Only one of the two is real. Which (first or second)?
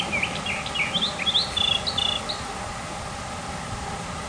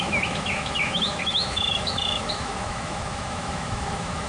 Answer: first